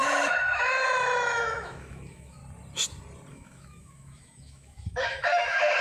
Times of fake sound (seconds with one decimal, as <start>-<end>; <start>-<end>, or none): 0.0-2.4; 3.3-5.8